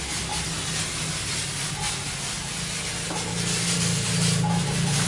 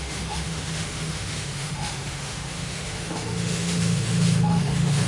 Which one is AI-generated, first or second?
second